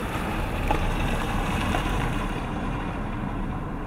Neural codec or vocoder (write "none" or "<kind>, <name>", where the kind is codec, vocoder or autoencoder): vocoder, BigVGAN v2